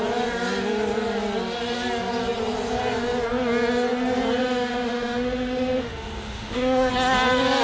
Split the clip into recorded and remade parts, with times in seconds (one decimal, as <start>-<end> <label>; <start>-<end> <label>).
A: 0.0-4.4 recorded; 4.4-6.9 remade; 6.9-7.6 recorded